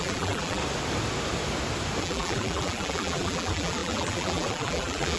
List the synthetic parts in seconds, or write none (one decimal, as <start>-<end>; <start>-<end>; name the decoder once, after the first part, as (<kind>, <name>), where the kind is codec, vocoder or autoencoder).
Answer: 0.0-0.6 (vocoder, BigVGAN v2); 2.0-5.2